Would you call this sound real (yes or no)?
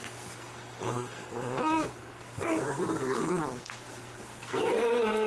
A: no